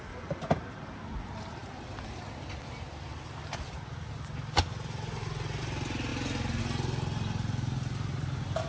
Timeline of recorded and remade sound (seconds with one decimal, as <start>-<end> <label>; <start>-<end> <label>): 0.0-8.7 recorded